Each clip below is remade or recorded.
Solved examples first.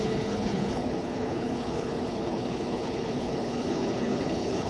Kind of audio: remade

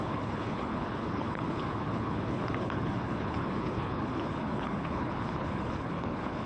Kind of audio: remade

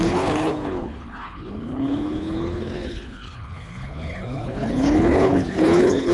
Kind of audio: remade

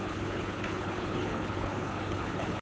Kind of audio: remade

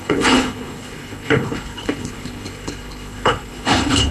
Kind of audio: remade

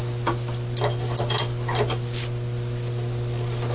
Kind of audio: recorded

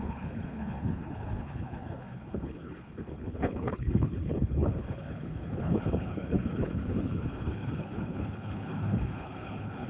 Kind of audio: remade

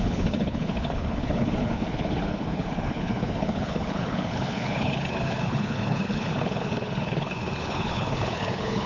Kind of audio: remade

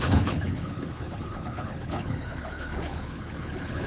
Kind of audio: remade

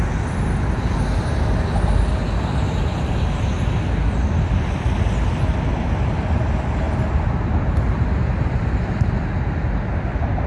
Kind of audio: recorded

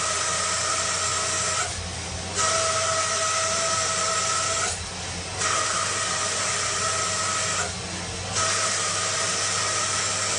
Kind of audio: recorded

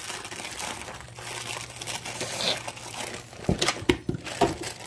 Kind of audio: recorded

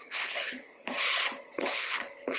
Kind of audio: remade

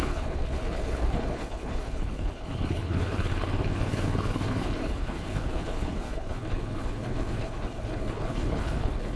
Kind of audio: remade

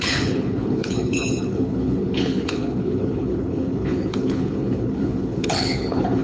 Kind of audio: remade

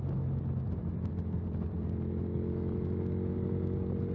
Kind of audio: recorded